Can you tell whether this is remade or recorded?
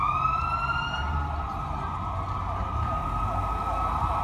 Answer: recorded